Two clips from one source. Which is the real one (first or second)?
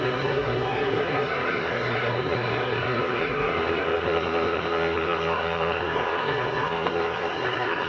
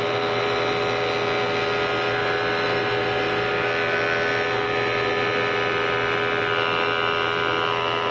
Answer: second